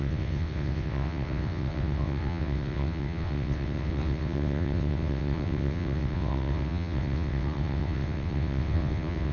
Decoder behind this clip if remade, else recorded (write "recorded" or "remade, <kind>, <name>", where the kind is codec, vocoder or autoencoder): remade, vocoder, WaveNeXt